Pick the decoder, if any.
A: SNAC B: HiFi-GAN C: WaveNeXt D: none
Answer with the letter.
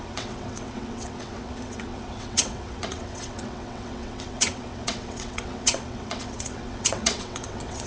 C